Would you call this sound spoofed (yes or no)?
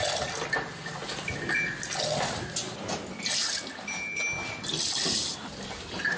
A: no